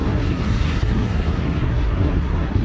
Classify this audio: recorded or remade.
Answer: remade